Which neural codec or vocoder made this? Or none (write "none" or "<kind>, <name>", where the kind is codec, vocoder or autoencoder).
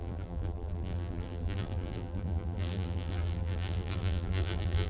vocoder, BigVGAN v2